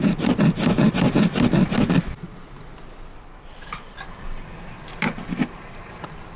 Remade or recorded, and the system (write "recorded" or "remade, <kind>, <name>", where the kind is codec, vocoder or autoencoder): recorded